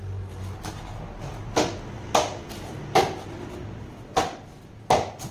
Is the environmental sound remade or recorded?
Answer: recorded